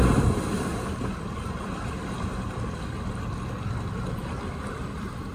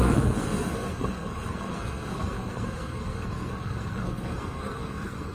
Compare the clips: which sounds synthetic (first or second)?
second